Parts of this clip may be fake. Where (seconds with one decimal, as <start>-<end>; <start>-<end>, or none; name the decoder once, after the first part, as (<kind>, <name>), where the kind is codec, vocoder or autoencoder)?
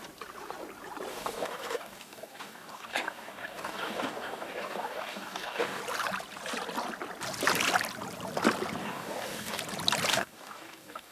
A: 1.1-5.8 (codec, DAC); 8.8-9.6; 10.1-11.1